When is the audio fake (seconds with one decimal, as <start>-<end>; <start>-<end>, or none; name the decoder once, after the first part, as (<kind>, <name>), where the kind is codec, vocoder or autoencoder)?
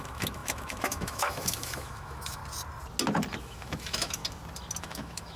0.0-2.4 (autoencoder, DAC-VAE); 3.4-4.2; 4.8-5.4